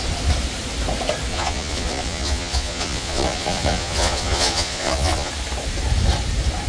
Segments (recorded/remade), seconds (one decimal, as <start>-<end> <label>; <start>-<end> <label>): 0.0-1.3 recorded; 1.3-5.3 remade; 5.3-6.7 recorded